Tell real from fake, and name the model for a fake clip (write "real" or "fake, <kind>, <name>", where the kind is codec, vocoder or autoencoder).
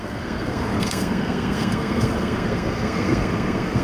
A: fake, codec, SNAC